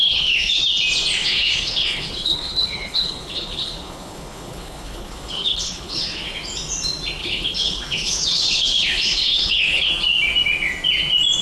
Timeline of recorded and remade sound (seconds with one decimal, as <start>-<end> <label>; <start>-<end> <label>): 0.0-0.6 remade; 0.6-1.2 recorded; 1.2-6.2 remade; 6.2-7.2 recorded; 7.2-9.9 remade; 9.9-11.4 recorded